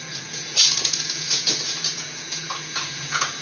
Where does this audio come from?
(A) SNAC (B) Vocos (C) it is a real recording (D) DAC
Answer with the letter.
B